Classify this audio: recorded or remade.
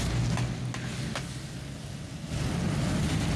recorded